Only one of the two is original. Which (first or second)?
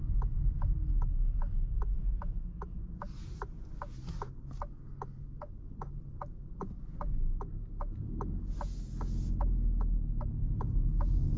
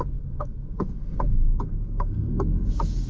first